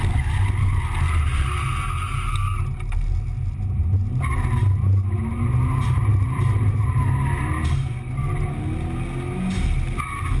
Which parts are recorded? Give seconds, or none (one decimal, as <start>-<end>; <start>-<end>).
0.0-6.1; 7.0-10.4